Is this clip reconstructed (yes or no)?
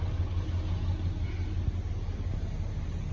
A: no